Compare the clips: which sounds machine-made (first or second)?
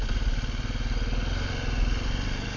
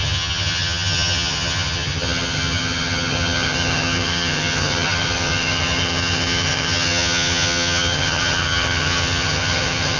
second